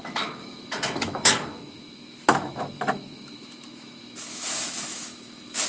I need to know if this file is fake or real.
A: fake